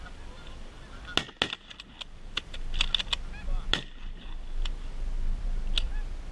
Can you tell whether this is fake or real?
real